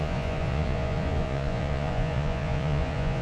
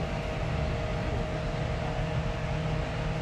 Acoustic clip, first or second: second